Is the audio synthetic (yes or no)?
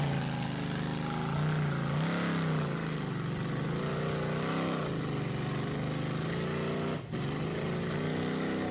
no